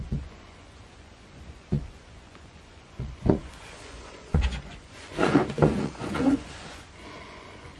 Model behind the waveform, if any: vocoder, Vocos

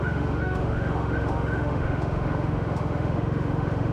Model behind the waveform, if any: autoencoder, DAC-VAE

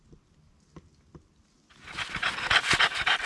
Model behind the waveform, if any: none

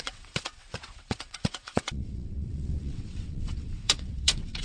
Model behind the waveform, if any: vocoder, WaveNeXt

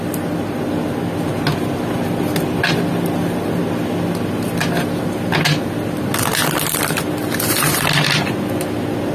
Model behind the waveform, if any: none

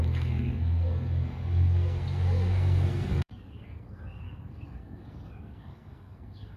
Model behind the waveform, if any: codec, SNAC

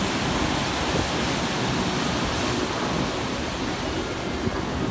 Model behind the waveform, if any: none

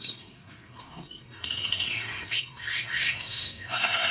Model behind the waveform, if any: codec, SNAC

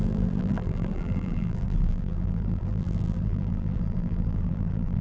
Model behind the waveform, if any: vocoder, BigVGAN v2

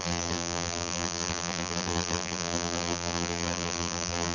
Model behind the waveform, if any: vocoder, BigVGAN v2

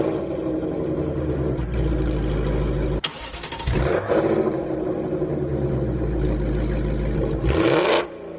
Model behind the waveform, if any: none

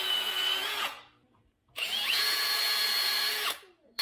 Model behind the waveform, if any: vocoder, Vocos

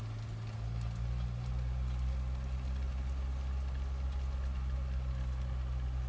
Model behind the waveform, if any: none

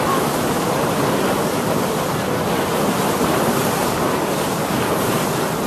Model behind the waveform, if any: none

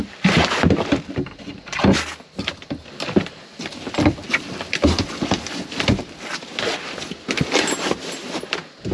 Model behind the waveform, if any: none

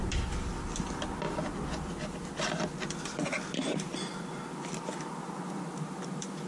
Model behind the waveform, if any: none